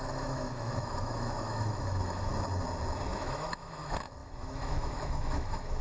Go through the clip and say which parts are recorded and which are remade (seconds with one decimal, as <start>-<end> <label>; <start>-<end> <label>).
0.0-2.3 remade; 2.3-3.1 recorded; 3.1-5.8 remade

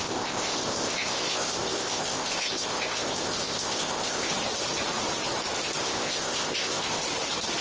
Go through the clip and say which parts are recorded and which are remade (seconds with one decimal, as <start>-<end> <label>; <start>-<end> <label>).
0.0-4.3 remade; 4.3-5.8 recorded; 5.8-7.0 remade; 7.0-7.6 recorded

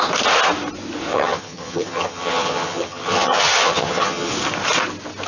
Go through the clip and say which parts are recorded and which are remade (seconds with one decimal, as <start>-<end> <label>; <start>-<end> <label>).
0.0-1.1 recorded; 1.1-4.3 remade; 4.3-5.3 recorded

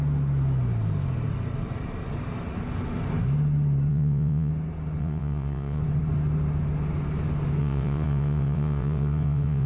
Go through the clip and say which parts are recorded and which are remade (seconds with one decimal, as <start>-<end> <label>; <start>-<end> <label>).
0.0-3.9 recorded; 3.9-4.5 remade; 4.5-5.0 recorded; 5.0-5.8 remade; 5.8-7.6 recorded; 7.6-9.7 remade